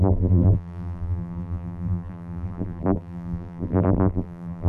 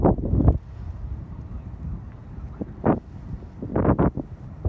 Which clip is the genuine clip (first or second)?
second